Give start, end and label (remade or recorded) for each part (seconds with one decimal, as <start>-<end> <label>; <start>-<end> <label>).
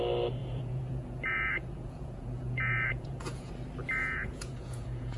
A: 0.0-0.4 recorded; 0.4-3.5 remade; 3.5-4.0 recorded; 4.0-5.2 remade